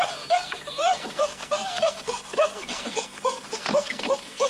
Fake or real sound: fake